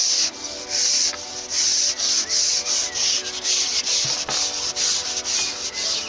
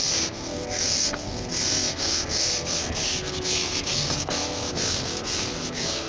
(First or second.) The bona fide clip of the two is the first